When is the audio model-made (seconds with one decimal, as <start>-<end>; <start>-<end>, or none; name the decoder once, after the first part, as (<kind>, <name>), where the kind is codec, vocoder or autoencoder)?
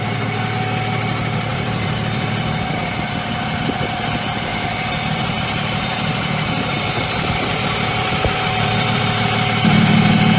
1.5-3.6 (vocoder, BigVGAN v2); 4.5-9.0